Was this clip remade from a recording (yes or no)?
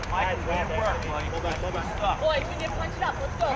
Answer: no